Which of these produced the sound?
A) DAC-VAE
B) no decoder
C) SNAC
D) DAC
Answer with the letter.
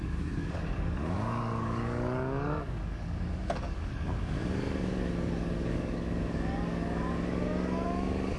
D